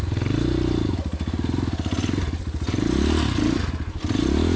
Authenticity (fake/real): real